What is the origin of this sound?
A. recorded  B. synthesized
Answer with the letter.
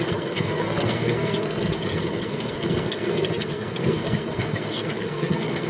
B